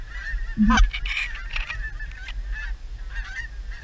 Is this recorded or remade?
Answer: recorded